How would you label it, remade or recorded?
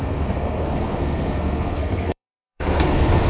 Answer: remade